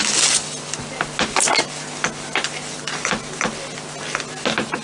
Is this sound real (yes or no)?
yes